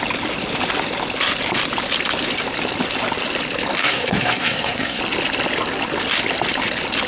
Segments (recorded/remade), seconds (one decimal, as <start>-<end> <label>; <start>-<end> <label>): 0.0-3.8 recorded; 3.8-5.0 remade; 5.0-7.1 recorded